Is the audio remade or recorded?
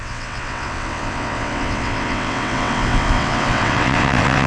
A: remade